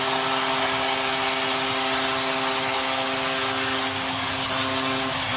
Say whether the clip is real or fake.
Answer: real